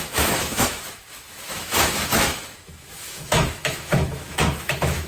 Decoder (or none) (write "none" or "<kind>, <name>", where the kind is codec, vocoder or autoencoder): autoencoder, DAC-VAE